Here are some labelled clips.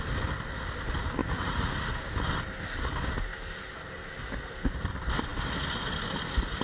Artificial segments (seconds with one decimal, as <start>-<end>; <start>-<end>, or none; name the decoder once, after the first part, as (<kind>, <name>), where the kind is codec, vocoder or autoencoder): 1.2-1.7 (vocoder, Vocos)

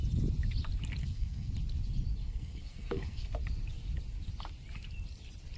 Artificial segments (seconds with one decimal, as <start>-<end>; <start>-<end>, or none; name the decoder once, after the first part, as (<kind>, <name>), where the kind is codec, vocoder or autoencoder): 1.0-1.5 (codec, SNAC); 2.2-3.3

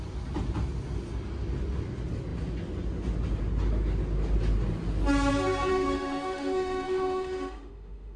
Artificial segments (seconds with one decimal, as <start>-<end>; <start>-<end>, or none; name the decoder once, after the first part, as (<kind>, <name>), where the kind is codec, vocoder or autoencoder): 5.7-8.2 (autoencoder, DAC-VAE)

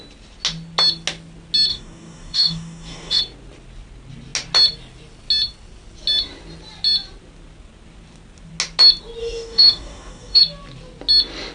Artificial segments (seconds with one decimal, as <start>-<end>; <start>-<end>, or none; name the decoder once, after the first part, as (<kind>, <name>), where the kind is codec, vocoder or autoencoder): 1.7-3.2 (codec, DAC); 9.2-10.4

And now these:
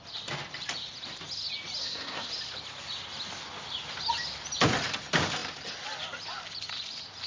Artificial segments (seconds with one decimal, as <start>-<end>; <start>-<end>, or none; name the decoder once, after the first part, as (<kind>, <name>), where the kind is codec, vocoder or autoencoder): 1.8-2.3 (codec, SNAC)

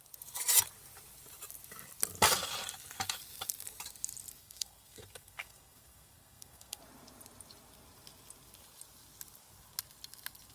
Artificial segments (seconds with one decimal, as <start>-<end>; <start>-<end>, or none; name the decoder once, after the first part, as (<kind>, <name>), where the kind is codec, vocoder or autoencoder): 4.4-6.8 (codec, SNAC)

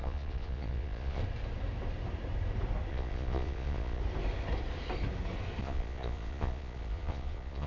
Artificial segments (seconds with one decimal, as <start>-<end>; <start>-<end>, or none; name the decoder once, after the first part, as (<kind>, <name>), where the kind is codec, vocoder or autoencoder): 0.0-1.2 (vocoder, Vocos); 2.9-4.0; 5.6-7.7